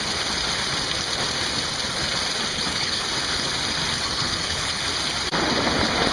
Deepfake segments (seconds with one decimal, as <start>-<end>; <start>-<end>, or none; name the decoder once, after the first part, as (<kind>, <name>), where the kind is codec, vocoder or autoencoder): 2.5-3.0 (codec, HILCodec); 4.2-4.8